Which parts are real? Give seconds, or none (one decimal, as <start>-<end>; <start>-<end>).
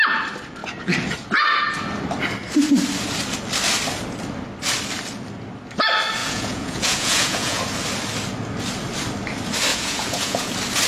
0.0-6.2; 7.6-9.7; 10.5-10.9